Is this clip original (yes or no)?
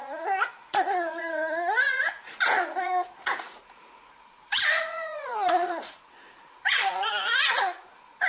no